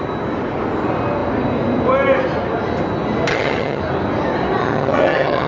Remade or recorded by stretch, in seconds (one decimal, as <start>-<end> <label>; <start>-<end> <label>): 0.0-3.3 recorded; 3.3-3.8 remade; 3.8-4.6 recorded; 4.6-5.5 remade